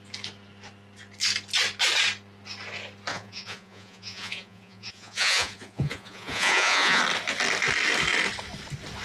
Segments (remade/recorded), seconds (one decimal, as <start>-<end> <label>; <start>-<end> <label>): 0.0-3.1 recorded; 3.1-7.0 remade; 7.0-9.0 recorded